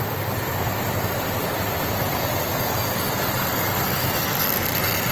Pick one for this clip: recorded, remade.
recorded